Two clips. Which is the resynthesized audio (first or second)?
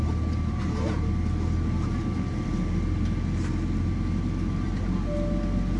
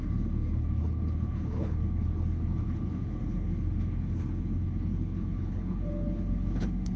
second